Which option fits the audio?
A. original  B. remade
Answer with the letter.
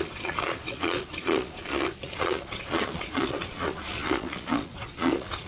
B